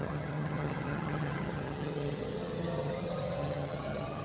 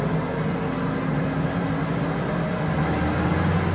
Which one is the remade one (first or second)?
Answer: first